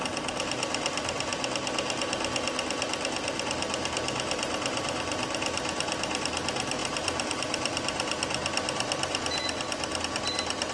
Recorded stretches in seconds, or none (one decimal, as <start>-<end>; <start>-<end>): 1.3-6.2